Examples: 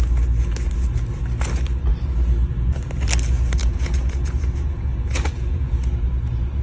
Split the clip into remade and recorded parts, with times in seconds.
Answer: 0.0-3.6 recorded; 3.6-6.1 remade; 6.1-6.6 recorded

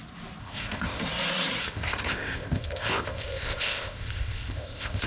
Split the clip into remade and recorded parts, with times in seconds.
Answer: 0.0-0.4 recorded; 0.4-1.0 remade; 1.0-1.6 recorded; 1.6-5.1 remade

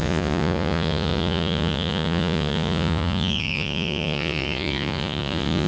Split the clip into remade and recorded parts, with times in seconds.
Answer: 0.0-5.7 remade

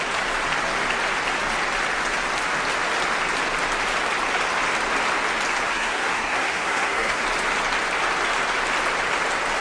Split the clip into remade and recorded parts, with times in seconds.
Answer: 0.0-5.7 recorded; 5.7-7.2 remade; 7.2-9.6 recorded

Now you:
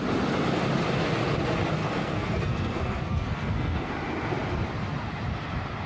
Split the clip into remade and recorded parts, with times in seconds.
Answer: 0.0-1.8 recorded; 1.8-3.9 remade; 3.9-5.9 recorded

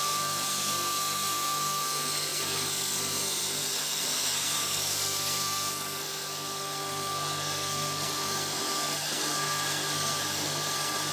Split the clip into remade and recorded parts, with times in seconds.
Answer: 0.0-11.1 remade